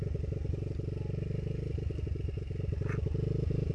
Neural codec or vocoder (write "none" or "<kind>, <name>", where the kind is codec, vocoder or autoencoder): none